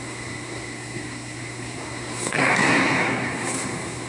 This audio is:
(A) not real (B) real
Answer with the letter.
A